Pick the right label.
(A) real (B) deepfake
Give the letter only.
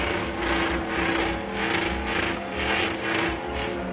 A